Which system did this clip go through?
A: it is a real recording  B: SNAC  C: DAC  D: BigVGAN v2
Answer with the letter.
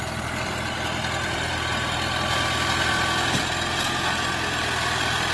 A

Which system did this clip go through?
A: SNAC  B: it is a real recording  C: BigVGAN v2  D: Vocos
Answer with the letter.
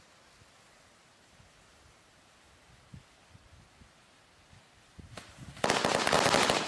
B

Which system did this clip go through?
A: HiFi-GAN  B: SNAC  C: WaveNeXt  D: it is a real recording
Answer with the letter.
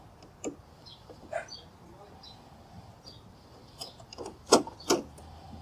D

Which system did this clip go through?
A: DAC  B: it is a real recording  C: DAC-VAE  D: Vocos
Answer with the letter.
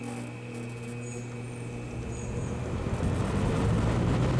B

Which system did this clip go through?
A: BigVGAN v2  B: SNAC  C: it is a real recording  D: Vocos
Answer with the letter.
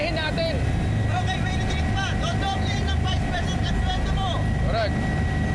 C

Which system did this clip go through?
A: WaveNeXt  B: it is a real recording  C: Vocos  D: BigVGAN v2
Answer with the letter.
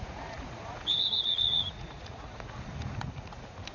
C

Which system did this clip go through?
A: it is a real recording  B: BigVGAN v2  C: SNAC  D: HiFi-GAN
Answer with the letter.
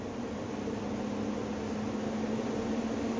A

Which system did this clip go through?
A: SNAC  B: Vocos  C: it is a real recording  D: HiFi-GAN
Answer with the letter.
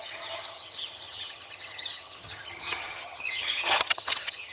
D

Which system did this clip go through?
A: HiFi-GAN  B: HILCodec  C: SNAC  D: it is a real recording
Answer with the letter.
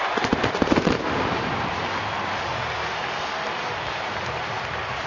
D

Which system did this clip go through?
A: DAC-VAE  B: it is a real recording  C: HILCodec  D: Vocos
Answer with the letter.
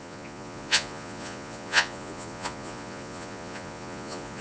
D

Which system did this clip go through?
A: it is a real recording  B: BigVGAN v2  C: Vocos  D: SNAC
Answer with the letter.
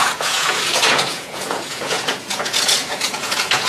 C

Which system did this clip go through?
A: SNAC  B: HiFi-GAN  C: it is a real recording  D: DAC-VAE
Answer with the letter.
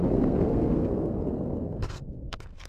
A